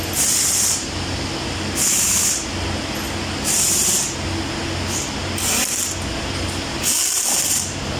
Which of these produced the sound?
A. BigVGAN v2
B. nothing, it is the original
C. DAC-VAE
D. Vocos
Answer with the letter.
B